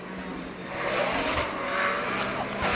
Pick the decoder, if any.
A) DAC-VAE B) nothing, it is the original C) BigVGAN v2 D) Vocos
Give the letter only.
B